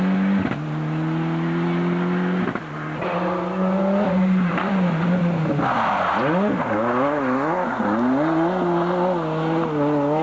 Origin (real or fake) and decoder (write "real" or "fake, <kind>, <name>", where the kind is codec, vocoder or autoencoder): real